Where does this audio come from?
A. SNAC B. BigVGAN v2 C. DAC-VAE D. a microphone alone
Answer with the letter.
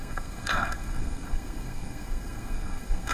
A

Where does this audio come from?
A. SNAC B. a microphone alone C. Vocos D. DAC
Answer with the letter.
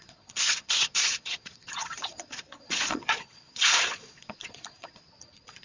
C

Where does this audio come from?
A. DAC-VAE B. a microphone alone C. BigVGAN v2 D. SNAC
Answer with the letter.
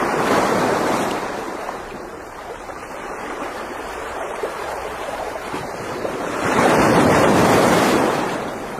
C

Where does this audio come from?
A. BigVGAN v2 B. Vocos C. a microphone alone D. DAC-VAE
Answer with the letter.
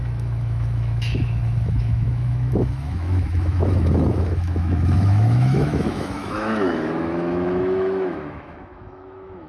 D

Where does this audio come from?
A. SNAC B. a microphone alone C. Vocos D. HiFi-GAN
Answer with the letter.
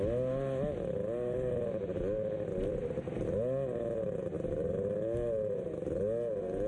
B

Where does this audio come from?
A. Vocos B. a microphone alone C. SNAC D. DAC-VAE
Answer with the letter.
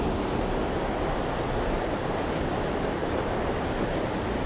B